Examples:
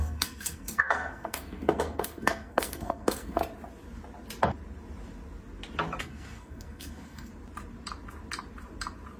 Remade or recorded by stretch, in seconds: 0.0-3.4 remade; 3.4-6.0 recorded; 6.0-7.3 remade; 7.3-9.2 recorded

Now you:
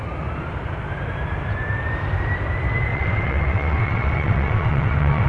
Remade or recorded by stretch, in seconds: 0.0-2.9 recorded; 2.9-5.3 remade

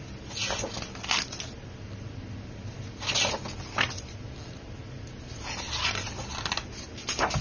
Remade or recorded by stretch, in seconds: 0.0-7.4 recorded

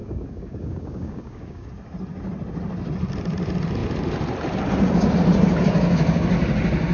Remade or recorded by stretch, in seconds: 0.0-1.7 remade; 1.7-6.9 recorded